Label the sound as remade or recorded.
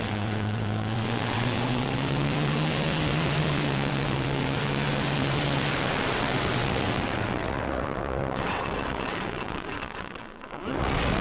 remade